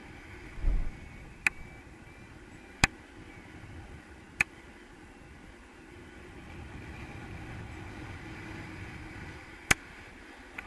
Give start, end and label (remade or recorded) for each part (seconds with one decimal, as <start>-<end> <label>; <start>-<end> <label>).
0.0-10.7 recorded